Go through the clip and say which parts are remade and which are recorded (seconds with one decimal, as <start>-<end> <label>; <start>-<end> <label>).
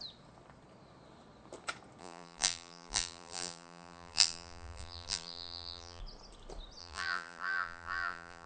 0.0-2.0 recorded; 2.0-6.0 remade; 6.0-6.8 recorded; 6.8-8.5 remade